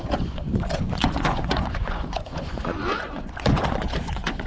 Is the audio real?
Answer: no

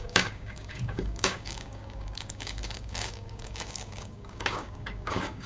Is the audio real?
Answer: no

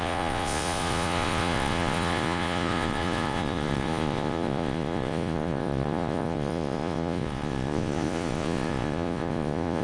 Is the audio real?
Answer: no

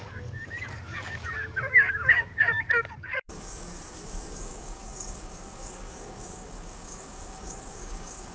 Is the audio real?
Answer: no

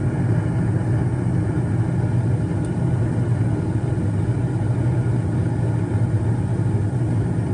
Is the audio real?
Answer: yes